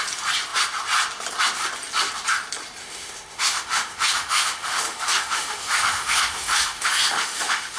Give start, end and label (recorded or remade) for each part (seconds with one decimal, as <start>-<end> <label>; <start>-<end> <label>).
0.0-2.8 recorded; 2.8-7.8 remade